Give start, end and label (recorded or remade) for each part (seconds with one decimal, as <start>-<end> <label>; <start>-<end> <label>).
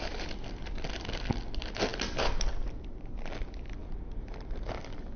0.0-5.2 recorded